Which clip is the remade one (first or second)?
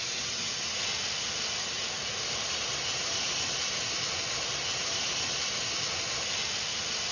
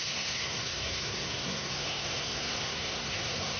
second